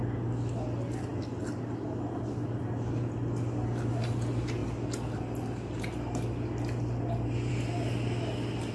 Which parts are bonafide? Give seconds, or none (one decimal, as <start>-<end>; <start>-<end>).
0.0-8.7